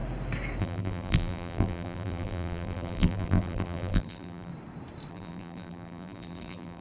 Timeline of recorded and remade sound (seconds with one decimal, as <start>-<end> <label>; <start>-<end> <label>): 0.0-0.6 recorded; 0.6-4.5 remade; 4.5-5.1 recorded; 5.1-6.8 remade

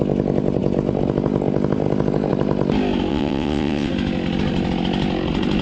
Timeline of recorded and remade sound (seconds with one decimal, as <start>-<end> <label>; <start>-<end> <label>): 0.0-3.1 recorded; 3.1-3.9 remade; 3.9-5.6 recorded

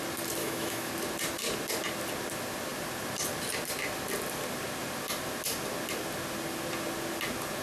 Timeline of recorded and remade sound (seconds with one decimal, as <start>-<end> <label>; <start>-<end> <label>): 0.0-0.4 recorded; 0.4-0.9 remade; 0.9-7.6 recorded

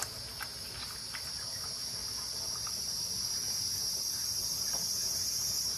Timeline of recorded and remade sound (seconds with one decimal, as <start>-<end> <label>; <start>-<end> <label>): 0.0-5.8 recorded

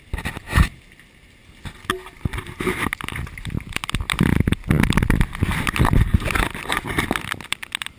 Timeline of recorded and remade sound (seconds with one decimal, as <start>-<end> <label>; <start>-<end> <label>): 0.0-5.5 recorded; 5.5-6.7 remade; 6.7-8.0 recorded